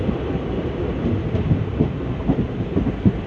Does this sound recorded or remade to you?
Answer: remade